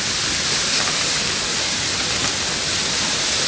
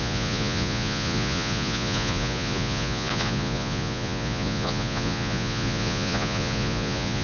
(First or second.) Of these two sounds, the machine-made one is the second